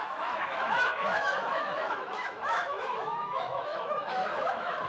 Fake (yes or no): yes